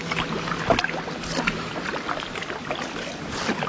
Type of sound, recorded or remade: recorded